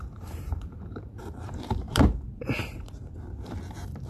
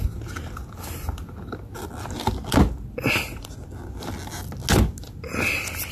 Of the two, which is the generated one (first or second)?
first